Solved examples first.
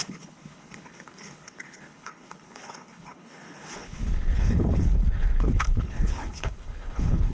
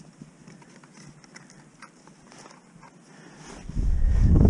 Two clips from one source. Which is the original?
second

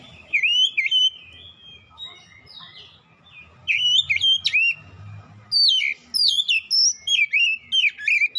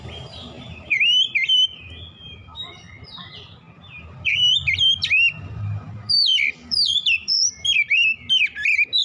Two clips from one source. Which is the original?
first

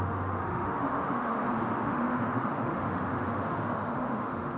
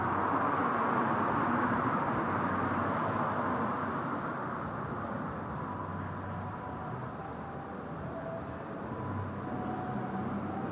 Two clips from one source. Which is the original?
second